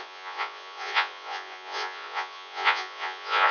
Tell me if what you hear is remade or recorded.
remade